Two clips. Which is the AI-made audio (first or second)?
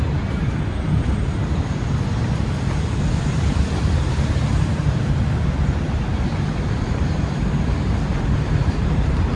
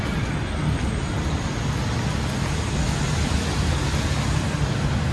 first